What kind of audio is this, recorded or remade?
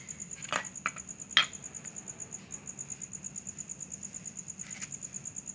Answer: recorded